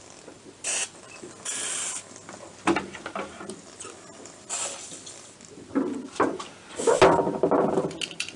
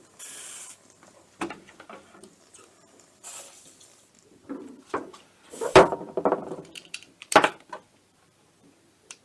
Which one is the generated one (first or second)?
second